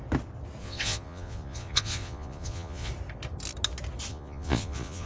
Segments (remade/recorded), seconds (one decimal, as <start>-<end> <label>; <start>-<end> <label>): 0.0-0.6 recorded; 0.6-2.9 remade; 2.9-4.1 recorded; 4.1-5.1 remade